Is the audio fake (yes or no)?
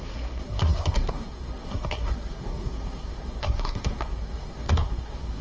yes